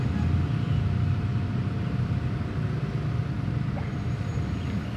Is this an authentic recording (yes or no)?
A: yes